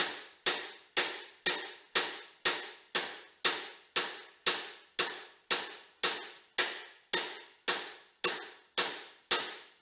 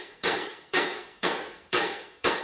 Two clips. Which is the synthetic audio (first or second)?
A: second